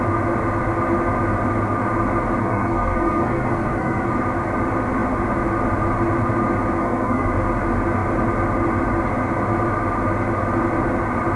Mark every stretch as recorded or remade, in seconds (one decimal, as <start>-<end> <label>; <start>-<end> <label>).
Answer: 0.0-2.4 recorded; 2.4-4.1 remade; 4.1-6.8 recorded; 6.8-7.3 remade; 7.3-11.4 recorded